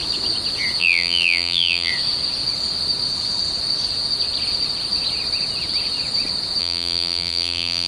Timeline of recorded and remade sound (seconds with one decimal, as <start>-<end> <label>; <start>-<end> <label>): 0.0-0.8 recorded; 0.8-1.9 remade; 1.9-6.6 recorded; 6.6-7.9 remade